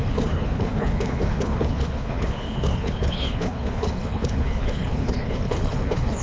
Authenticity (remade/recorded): remade